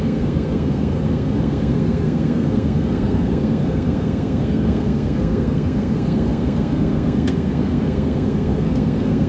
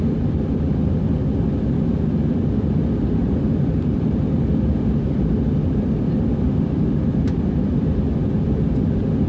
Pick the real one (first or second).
second